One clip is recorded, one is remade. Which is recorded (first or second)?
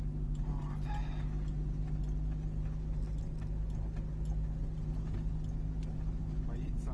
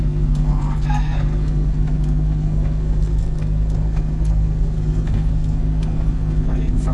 first